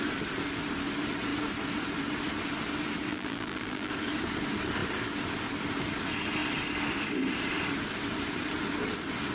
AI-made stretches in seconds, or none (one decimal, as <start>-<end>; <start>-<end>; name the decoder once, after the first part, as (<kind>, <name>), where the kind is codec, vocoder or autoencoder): 3.1-3.9 (vocoder, BigVGAN v2)